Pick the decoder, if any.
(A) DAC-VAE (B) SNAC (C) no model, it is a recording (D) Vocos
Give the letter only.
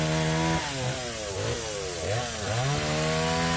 C